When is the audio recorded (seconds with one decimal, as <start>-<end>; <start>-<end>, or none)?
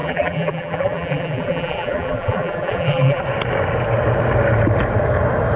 3.2-5.6